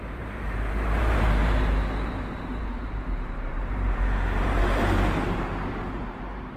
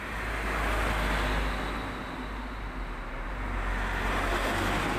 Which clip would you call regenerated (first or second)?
first